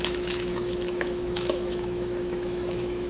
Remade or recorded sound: remade